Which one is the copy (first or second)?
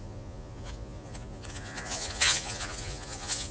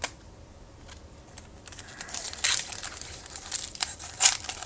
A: first